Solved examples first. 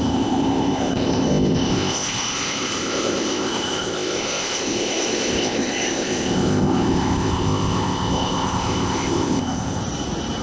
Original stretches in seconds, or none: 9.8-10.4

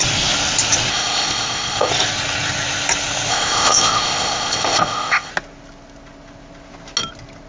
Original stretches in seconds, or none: 0.0-0.9; 1.9-3.3; 5.3-7.5

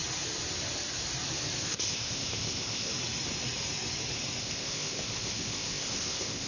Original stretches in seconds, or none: 0.0-1.6; 2.9-4.4